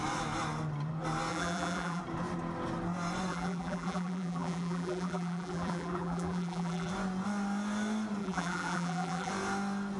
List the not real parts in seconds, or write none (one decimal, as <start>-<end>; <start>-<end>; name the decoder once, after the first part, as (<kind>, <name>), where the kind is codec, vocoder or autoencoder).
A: 1.3-2.0 (vocoder, BigVGAN v2); 3.3-6.9; 8.2-9.3